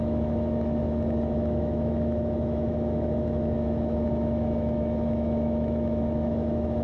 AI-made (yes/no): yes